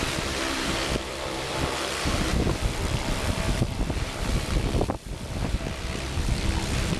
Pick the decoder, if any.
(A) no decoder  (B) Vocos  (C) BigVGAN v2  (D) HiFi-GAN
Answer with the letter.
C